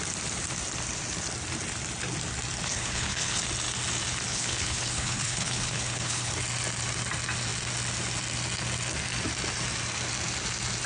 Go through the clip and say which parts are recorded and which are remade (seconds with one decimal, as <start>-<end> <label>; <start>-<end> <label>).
0.0-2.7 recorded; 2.7-3.4 remade; 3.4-4.3 recorded; 4.3-6.3 remade; 6.3-10.9 recorded